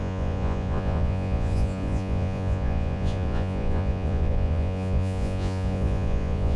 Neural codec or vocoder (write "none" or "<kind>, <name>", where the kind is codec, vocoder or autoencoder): vocoder, Vocos